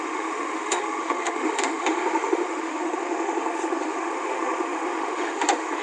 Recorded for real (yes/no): no